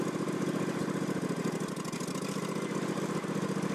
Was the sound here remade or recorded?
recorded